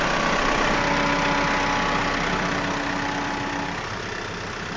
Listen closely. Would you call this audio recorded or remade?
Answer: recorded